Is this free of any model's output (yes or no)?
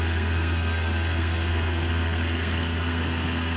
no